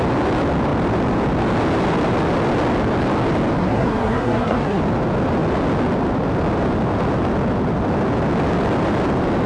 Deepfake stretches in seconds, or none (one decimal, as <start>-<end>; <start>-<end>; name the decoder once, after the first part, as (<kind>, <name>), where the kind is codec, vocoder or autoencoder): 3.6-4.8 (codec, SNAC)